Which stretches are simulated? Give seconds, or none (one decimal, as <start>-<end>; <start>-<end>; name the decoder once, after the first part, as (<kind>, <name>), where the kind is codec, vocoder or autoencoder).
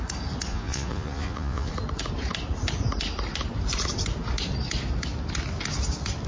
0.5-1.7 (vocoder, Vocos)